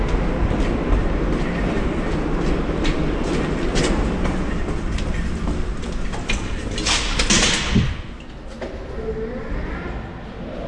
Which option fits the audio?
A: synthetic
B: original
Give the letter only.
B